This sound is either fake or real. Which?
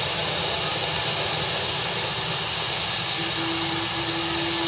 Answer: real